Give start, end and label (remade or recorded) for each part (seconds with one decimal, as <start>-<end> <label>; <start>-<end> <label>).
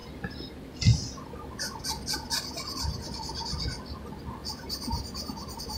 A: 0.0-4.4 recorded; 4.4-5.8 remade